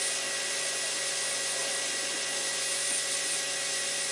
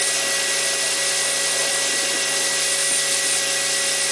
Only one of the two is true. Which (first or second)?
second